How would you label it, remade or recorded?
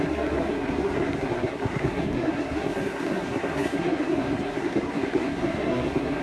remade